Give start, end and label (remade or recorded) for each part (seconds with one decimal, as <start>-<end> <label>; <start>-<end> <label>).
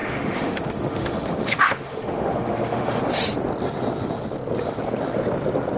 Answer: 0.0-3.0 remade; 3.0-5.8 recorded